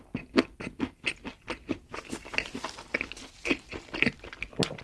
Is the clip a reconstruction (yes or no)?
no